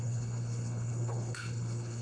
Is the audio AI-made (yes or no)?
yes